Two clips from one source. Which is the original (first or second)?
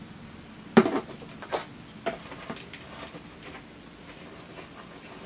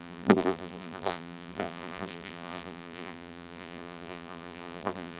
first